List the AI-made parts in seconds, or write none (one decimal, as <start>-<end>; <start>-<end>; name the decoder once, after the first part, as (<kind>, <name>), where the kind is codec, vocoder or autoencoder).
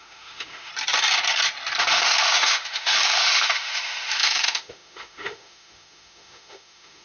0.0-0.7 (autoencoder, DAC-VAE); 1.8-7.0